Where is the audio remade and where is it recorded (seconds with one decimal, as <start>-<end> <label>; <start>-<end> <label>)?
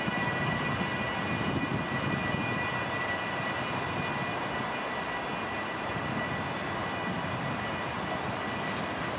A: 0.0-9.2 recorded